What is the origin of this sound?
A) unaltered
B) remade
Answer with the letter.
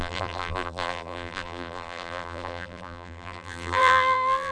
B